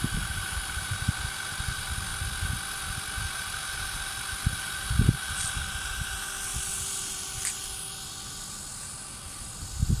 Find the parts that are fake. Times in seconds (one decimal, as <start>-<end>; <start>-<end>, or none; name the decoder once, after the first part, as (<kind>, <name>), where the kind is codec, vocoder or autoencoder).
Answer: none